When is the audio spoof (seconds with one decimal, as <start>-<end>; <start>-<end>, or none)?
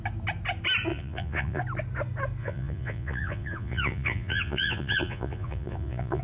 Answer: 0.9-1.6; 2.4-6.2